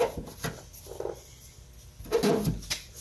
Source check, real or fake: real